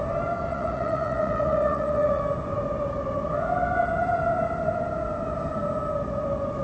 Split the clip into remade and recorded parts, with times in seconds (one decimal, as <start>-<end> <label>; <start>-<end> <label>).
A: 0.0-0.5 recorded; 0.5-2.2 remade; 2.2-6.6 recorded